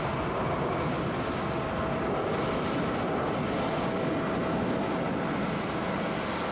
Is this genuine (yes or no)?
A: yes